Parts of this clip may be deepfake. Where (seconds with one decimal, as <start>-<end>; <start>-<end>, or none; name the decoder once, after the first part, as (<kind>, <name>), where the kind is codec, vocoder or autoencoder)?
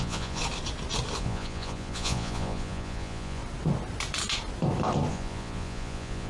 0.0-0.4 (vocoder, Vocos); 1.2-3.4; 5.1-6.3